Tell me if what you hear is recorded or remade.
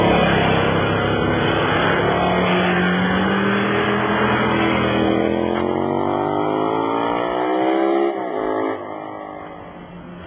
recorded